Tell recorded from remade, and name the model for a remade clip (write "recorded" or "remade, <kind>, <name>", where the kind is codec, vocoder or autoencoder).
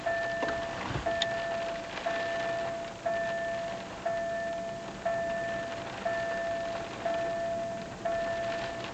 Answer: recorded